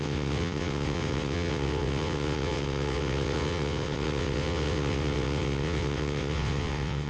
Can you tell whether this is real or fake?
fake